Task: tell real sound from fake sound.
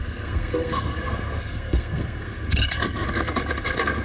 fake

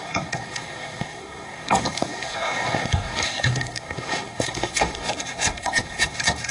fake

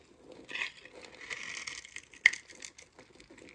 real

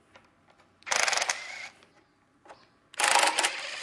real